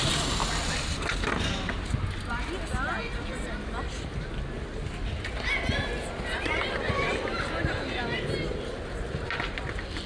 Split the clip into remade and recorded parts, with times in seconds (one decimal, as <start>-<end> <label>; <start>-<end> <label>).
0.0-10.1 recorded